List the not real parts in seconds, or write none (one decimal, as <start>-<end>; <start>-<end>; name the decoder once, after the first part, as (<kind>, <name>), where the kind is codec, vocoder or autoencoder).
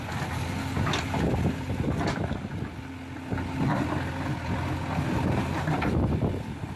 none